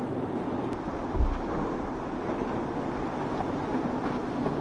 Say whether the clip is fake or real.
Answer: real